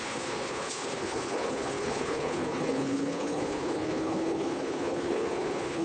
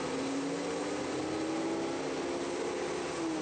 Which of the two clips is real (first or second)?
second